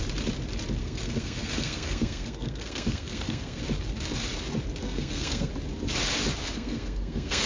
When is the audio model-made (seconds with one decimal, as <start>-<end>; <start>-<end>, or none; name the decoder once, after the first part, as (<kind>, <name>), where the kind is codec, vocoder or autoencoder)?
0.8-3.6 (codec, SNAC); 4.8-5.5; 6.4-7.5